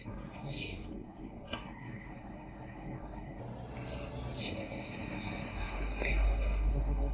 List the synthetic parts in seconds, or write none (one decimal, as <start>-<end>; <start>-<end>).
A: 0.0-3.4; 4.4-7.1